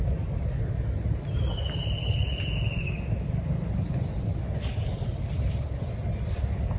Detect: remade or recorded recorded